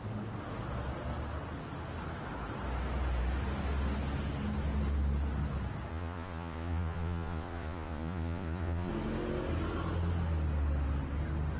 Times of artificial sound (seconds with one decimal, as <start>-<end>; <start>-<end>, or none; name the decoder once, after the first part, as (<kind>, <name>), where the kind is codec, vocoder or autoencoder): 5.9-8.9 (vocoder, Vocos)